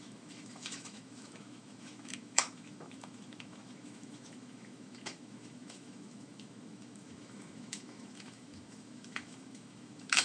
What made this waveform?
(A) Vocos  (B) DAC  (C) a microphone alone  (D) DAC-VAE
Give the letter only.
D